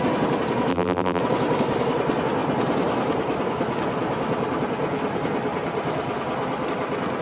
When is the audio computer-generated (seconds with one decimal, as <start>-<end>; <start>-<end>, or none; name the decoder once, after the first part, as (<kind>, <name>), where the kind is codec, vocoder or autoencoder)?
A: 0.7-1.2 (vocoder, BigVGAN v2)